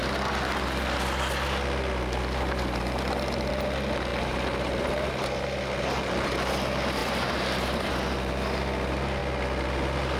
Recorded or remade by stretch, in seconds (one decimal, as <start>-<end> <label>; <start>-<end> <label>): 0.0-4.1 recorded; 4.1-5.6 remade; 5.6-7.0 recorded; 7.0-7.9 remade; 7.9-10.2 recorded